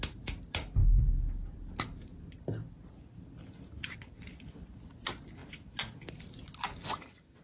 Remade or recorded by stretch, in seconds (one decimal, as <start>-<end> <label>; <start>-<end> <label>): 0.0-7.4 recorded